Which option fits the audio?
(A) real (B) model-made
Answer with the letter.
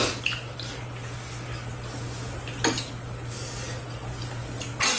A